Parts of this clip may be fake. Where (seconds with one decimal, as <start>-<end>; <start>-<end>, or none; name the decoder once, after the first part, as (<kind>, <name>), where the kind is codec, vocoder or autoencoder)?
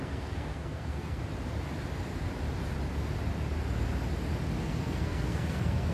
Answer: 0.0-1.2 (codec, SNAC); 4.6-5.9